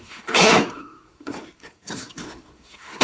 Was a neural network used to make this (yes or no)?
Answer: yes